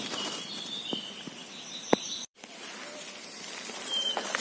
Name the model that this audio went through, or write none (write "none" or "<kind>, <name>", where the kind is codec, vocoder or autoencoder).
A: vocoder, BigVGAN v2